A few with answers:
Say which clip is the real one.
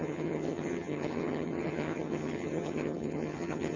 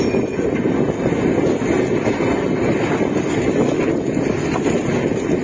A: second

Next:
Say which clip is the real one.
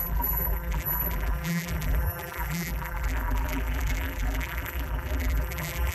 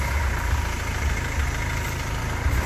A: second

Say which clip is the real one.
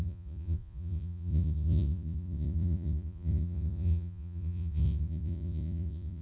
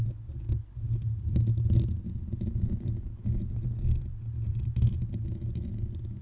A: second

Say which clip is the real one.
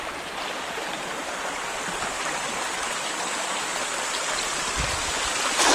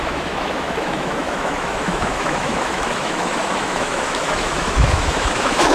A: first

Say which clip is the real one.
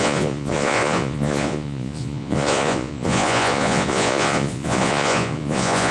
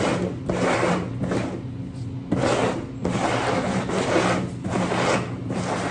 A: second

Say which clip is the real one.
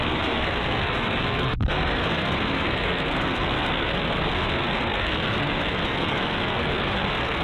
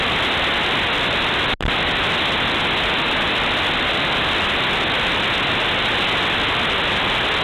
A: second